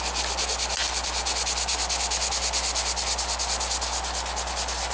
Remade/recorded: recorded